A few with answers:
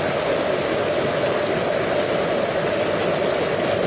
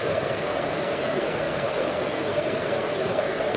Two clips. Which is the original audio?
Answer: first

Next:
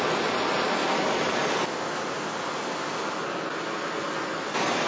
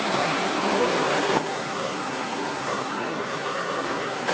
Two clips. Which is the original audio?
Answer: first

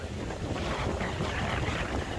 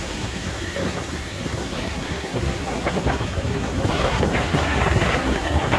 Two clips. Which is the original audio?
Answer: first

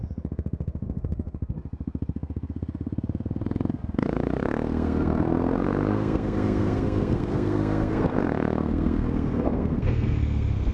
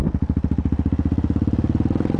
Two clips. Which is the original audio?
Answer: second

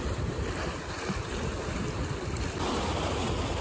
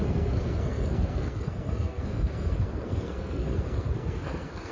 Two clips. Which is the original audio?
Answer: first